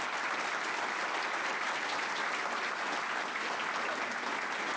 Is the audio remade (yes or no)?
no